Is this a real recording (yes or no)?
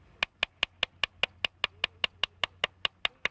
yes